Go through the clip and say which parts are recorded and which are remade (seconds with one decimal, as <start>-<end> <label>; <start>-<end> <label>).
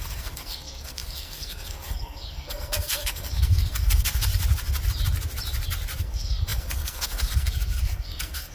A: 0.0-4.3 remade; 4.3-6.0 recorded; 6.0-8.5 remade